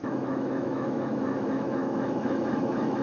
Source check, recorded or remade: remade